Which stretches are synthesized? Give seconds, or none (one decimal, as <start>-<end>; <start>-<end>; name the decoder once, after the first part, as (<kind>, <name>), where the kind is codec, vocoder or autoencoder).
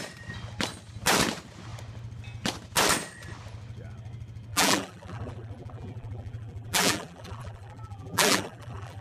4.5-9.0 (vocoder, BigVGAN v2)